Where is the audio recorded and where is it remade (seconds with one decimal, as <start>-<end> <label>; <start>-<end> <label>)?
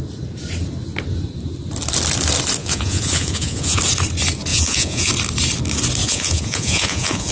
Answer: 0.0-2.6 recorded; 2.6-3.8 remade; 3.8-4.5 recorded; 4.5-5.1 remade; 5.1-6.0 recorded; 6.0-7.3 remade